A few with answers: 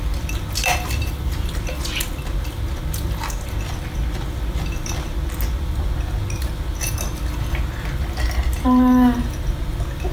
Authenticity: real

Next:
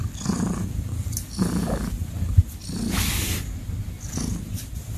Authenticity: real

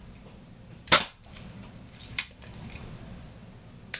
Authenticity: fake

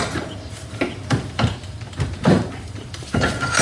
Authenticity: fake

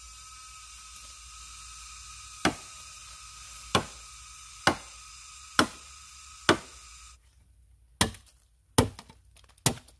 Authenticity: real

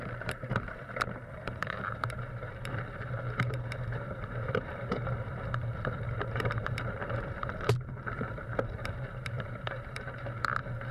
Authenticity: fake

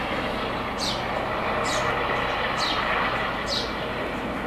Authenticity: real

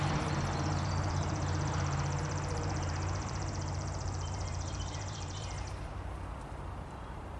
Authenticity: fake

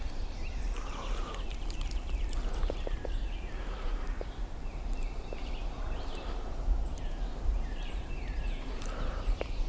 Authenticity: fake